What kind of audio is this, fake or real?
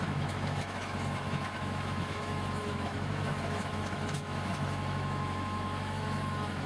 fake